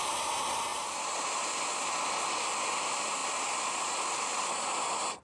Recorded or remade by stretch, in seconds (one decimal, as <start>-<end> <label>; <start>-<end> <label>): 0.0-5.2 recorded